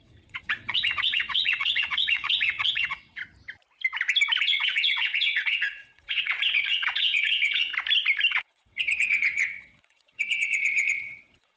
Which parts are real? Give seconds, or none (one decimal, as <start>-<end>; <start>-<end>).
3.2-4.4; 7.7-8.3